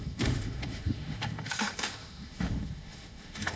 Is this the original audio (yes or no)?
no